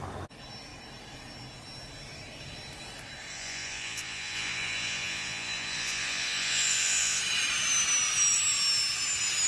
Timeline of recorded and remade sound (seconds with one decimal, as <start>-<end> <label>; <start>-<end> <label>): 0.0-3.3 recorded; 3.3-7.2 remade; 7.2-9.5 recorded